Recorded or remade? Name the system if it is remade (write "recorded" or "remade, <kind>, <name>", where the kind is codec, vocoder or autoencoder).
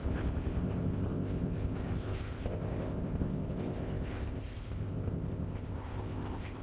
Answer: remade, codec, ZipCodec